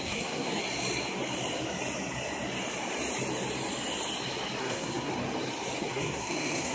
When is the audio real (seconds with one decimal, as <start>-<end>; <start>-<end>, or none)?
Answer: 0.6-4.6; 5.1-5.8